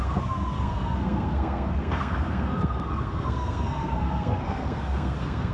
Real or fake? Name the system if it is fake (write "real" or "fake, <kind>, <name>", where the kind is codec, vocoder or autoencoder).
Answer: fake, codec, SNAC